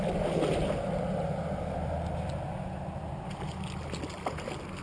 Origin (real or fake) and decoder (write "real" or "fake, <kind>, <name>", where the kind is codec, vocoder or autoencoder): real